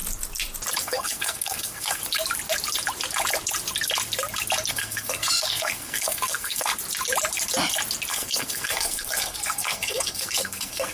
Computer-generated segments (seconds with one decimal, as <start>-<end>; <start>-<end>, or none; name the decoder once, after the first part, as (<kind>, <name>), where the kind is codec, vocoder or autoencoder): 0.8-2.0 (codec, SNAC); 4.7-6.7; 8.1-10.9